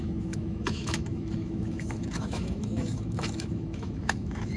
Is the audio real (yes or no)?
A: no